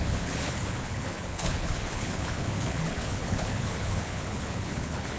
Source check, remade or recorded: remade